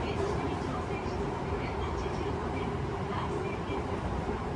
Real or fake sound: fake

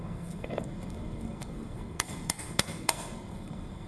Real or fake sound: fake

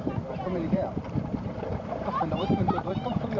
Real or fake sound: fake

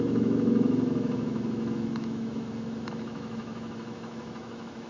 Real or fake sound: fake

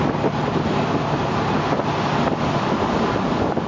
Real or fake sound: real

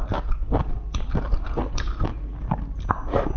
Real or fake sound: real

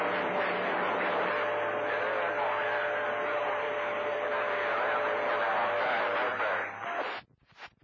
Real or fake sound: real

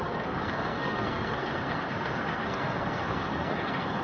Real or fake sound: fake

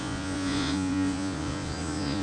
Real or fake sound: fake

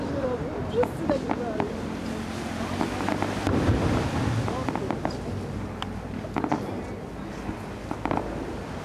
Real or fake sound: real